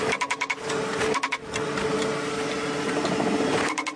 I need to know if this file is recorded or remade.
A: recorded